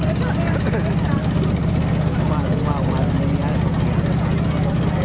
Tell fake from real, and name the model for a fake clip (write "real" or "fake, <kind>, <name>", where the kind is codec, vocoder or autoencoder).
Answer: real